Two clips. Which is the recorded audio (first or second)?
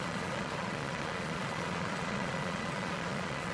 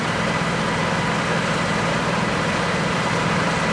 second